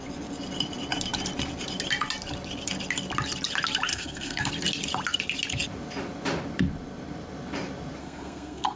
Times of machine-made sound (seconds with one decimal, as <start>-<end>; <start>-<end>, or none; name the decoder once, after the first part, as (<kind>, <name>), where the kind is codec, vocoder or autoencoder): 3.9-4.5 (codec, SNAC); 8.0-8.8